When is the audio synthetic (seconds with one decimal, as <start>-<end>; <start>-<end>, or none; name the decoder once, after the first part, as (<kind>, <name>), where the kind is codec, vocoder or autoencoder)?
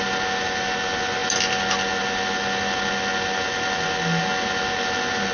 none